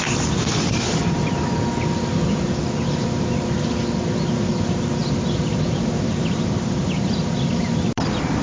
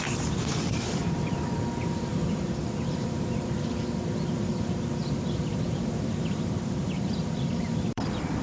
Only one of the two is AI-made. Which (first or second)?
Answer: second